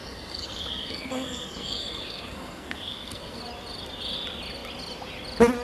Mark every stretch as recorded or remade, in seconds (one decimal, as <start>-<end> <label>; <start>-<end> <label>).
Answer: 0.0-3.4 remade; 3.4-5.6 recorded

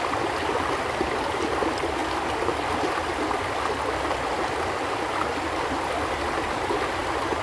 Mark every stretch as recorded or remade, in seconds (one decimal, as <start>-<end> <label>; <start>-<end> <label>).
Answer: 0.0-7.4 recorded

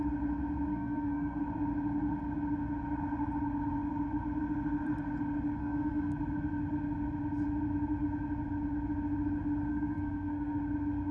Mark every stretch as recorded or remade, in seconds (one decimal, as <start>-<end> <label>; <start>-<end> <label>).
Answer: 0.0-0.7 recorded; 0.7-1.4 remade; 1.4-5.6 recorded; 5.6-6.2 remade; 6.2-9.7 recorded; 9.7-10.6 remade; 10.6-11.1 recorded

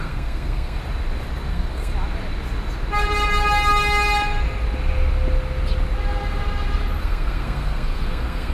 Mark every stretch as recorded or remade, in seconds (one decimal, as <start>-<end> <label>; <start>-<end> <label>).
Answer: 0.0-0.8 remade; 0.8-1.5 recorded; 1.5-1.9 remade; 1.9-7.0 recorded; 7.0-8.5 remade

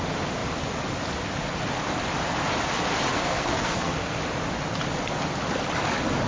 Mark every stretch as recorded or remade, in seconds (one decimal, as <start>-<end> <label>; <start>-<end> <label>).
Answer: 0.0-3.1 recorded; 3.1-4.2 remade; 4.2-6.3 recorded

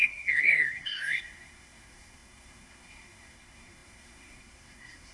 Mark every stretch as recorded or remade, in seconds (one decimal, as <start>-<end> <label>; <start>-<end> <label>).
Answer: 0.0-5.1 remade